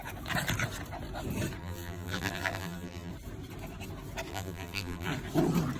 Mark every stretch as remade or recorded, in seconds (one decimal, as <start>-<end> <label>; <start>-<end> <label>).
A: 0.0-1.6 recorded; 1.6-3.1 remade; 3.1-4.3 recorded; 4.3-5.1 remade; 5.1-5.8 recorded